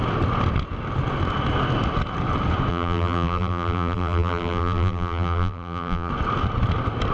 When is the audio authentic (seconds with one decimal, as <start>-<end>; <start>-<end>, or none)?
0.0-2.7; 6.1-7.1